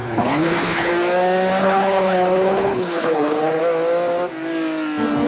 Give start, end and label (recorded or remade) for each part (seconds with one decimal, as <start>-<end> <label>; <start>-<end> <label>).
0.0-0.9 remade; 0.9-1.6 recorded; 1.6-3.6 remade; 3.6-5.3 recorded